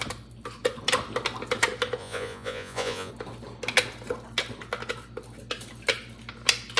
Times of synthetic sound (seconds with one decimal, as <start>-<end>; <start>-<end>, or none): 2.0-3.1